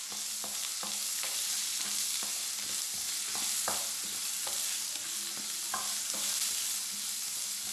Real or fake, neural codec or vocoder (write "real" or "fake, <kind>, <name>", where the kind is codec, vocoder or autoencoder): real